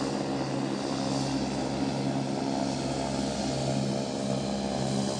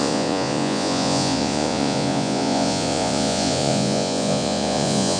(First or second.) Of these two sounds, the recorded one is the first